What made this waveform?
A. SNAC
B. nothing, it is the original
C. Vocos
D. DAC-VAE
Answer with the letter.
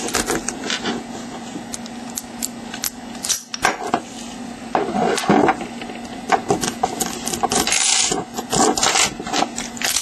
B